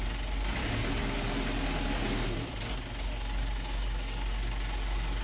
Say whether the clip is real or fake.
real